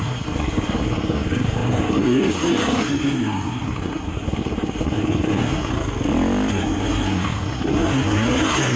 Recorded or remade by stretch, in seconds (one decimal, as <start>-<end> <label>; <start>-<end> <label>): 0.0-5.7 remade; 5.7-6.5 recorded; 6.5-8.8 remade